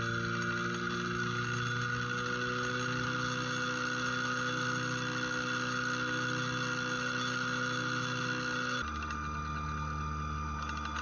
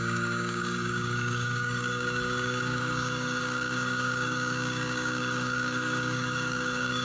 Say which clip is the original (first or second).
first